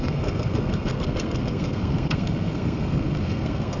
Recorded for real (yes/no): no